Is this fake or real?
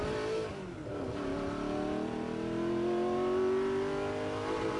real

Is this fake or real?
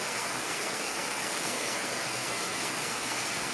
fake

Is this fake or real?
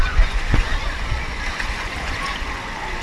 fake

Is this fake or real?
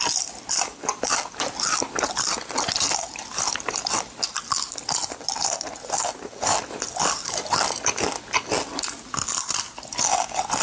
real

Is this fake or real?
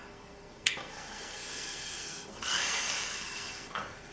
fake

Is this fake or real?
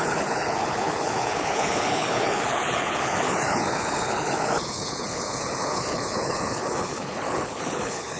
fake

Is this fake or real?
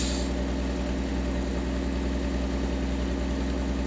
real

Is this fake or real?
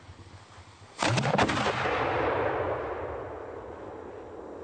real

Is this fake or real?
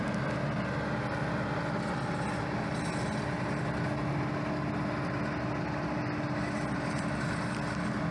real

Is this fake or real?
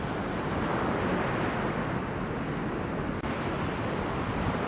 real